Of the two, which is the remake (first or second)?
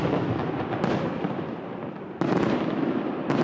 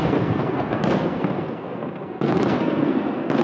second